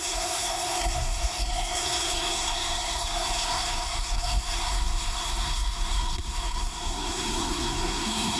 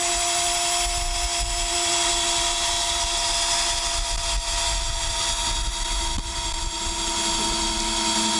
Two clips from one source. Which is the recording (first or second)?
second